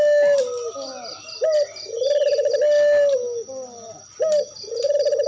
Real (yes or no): yes